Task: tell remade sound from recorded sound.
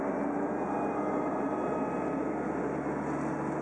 recorded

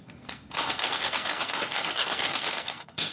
remade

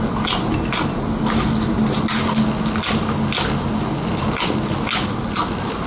recorded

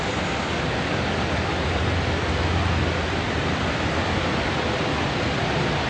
recorded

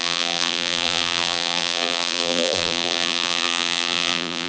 remade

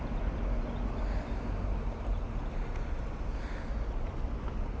recorded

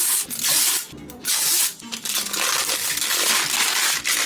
recorded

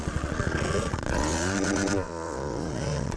remade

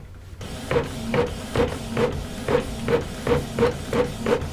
recorded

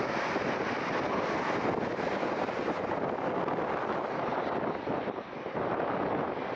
recorded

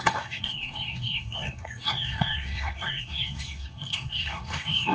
remade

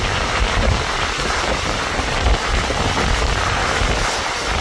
recorded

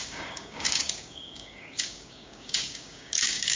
remade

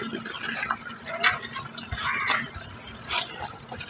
recorded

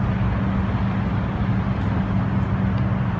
recorded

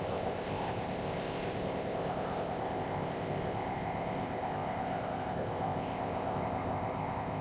remade